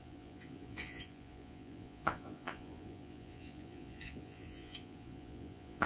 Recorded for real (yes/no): no